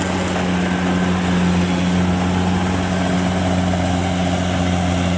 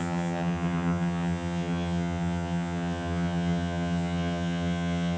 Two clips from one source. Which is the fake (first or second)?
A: second